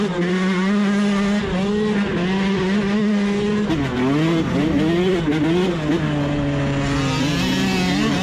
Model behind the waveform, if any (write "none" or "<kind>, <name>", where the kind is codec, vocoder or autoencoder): none